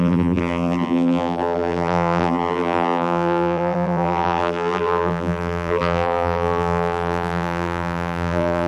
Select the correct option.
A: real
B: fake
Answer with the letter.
B